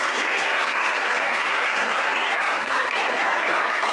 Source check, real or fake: fake